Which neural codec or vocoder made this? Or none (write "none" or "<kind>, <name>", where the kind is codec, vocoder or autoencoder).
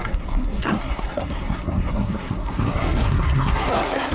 codec, SNAC